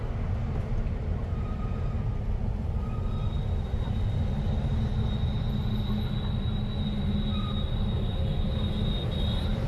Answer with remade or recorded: recorded